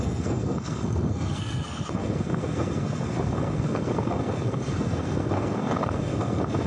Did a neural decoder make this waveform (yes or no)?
yes